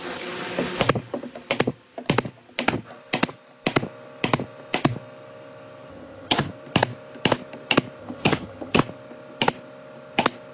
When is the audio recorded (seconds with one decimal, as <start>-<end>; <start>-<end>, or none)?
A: 0.0-5.9; 6.5-8.0; 8.8-10.5